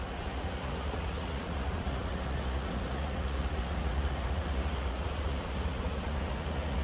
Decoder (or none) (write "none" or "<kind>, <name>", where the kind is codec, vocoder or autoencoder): vocoder, Vocos